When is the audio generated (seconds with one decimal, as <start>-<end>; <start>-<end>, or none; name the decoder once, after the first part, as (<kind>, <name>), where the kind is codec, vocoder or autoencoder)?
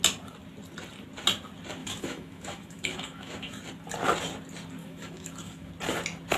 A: 1.8-3.6 (autoencoder, DAC-VAE); 4.8-5.7